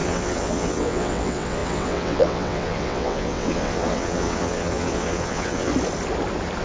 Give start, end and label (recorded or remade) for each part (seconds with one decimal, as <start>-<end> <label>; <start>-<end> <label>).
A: 0.0-5.7 remade; 5.7-6.6 recorded